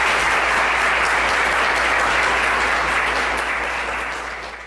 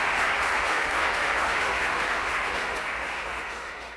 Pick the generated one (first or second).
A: second